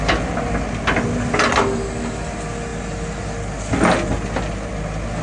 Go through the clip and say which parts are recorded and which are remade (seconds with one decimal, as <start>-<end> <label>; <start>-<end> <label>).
0.0-5.2 recorded